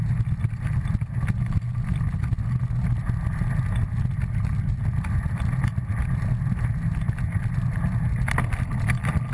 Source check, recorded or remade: recorded